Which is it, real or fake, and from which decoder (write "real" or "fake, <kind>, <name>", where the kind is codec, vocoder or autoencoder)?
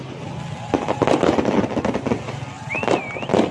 real